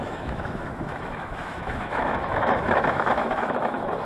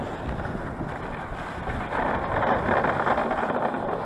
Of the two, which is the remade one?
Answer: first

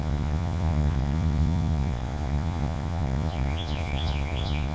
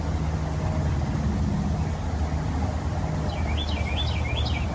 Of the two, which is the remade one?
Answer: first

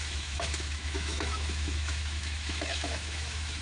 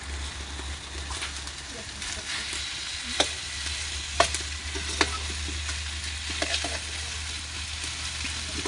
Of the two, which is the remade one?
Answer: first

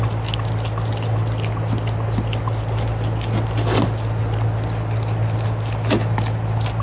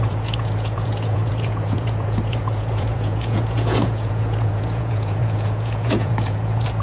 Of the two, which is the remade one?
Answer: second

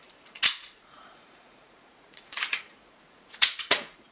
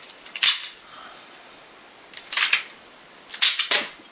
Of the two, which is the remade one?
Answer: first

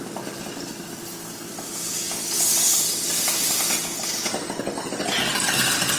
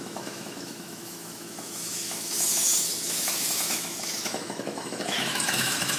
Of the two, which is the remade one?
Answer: second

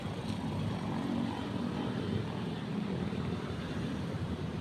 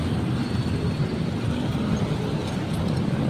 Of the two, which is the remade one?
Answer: first